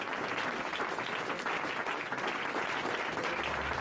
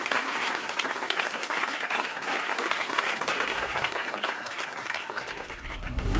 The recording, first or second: first